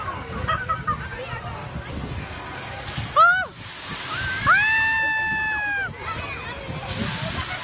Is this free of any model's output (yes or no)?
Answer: yes